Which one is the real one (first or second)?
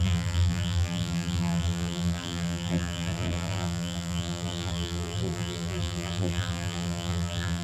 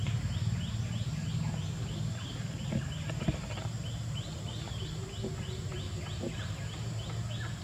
second